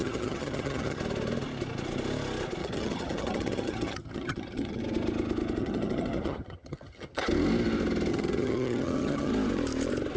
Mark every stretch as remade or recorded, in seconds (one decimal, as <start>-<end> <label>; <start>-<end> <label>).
0.0-1.0 remade; 1.0-2.6 recorded; 2.6-4.8 remade; 4.8-5.6 recorded; 5.6-7.2 remade; 7.2-8.1 recorded; 8.1-9.3 remade; 9.3-10.2 recorded